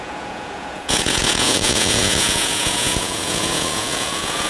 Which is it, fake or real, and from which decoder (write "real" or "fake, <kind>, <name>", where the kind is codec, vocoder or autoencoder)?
fake, vocoder, Vocos